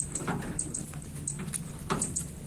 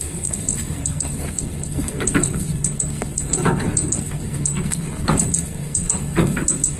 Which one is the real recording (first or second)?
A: first